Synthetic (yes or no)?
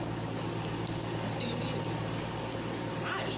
no